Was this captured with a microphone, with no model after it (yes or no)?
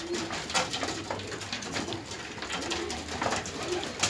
yes